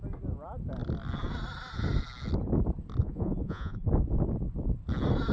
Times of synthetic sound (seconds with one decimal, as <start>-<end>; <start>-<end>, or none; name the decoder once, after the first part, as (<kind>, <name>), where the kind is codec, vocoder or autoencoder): 3.0-3.9 (vocoder, Vocos)